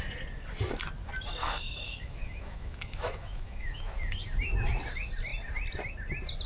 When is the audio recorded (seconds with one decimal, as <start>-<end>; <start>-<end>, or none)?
0.0-1.4; 4.0-6.5